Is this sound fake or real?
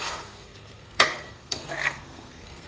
fake